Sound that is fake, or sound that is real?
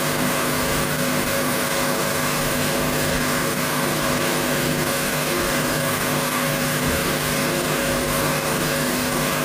fake